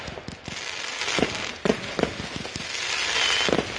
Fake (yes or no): no